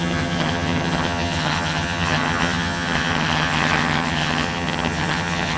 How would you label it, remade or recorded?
remade